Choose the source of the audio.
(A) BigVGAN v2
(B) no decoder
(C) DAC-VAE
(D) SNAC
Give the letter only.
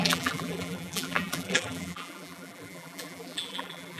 A